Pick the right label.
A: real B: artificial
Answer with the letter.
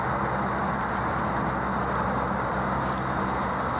A